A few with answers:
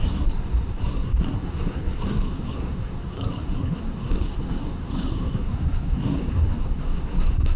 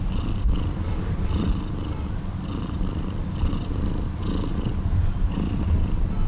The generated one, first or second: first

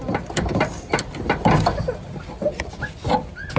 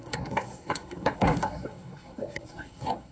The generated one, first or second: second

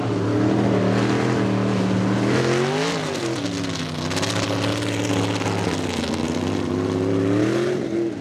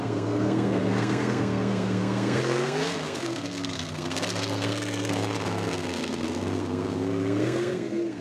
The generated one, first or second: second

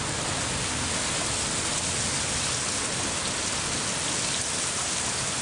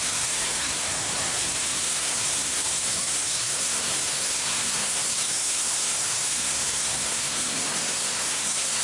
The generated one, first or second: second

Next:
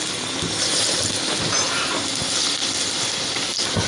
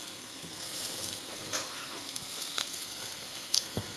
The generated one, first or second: second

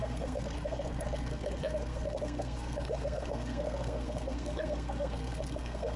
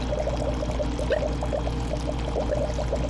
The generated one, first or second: first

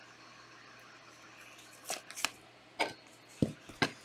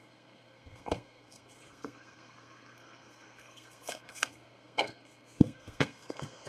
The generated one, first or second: second